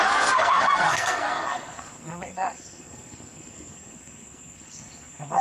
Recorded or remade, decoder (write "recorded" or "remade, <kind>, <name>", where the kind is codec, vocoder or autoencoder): remade, codec, SNAC